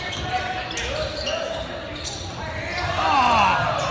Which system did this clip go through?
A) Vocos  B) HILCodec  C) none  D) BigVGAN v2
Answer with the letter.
C